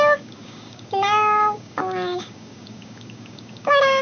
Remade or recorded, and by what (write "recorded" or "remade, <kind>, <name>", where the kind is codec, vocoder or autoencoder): remade, codec, DAC